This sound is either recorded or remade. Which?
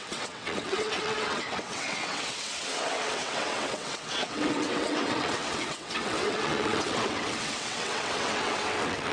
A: remade